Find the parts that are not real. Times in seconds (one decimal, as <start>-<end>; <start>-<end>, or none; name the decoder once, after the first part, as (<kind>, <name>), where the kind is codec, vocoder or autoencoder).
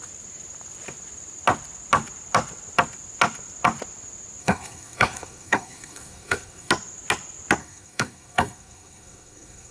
4.4-6.7 (codec, SNAC); 7.6-9.7